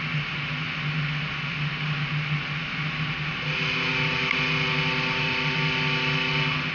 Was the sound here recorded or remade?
recorded